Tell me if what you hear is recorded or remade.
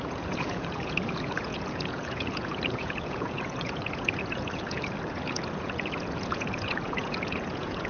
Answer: remade